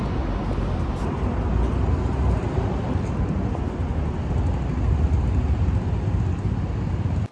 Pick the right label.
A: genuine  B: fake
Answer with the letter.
A